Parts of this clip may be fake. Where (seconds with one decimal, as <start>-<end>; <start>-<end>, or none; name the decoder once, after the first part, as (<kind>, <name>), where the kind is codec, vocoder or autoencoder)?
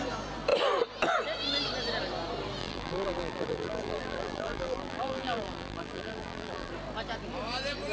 2.6-6.7 (vocoder, BigVGAN v2)